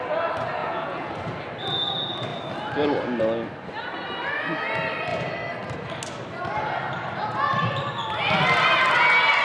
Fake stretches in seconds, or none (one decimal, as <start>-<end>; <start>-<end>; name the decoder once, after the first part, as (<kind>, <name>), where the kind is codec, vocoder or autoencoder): 0.6-1.1 (vocoder, Vocos)